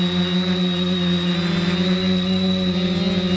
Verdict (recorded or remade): recorded